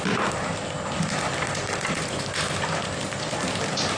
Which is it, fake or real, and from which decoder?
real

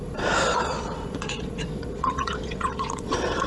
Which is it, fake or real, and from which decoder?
fake, vocoder, Vocos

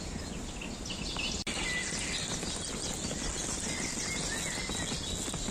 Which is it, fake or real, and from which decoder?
real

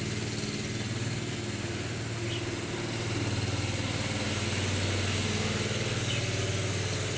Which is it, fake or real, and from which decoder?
real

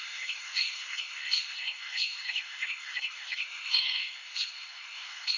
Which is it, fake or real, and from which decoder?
fake, codec, SNAC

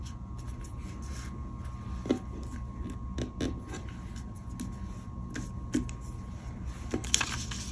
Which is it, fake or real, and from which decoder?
real